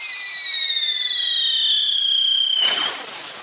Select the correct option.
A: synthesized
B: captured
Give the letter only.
B